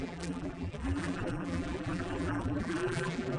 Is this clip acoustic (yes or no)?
no